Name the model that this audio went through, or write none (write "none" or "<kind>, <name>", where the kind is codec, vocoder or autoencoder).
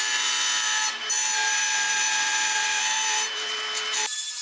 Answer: vocoder, BigVGAN v2